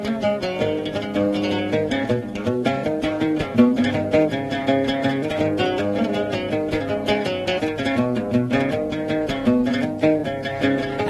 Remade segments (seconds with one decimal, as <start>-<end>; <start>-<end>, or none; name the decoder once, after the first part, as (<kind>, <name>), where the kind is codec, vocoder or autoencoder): 2.4-4.6 (vocoder, BigVGAN v2); 10.2-11.1